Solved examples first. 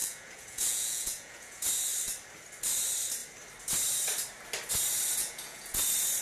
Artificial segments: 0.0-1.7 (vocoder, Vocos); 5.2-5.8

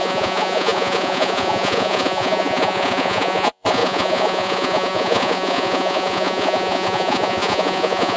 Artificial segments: 0.0-8.2 (vocoder, Vocos)

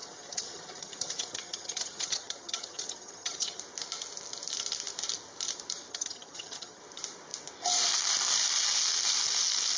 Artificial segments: 0.0-3.6 (vocoder, HiFi-GAN); 5.9-6.8

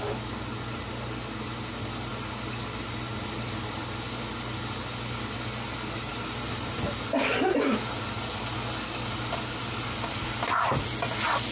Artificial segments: 6.1-8.1 (vocoder, BigVGAN v2)